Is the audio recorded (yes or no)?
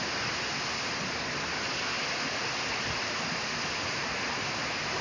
yes